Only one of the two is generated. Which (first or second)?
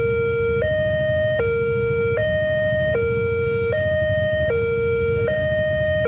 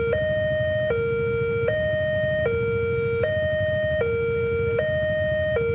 first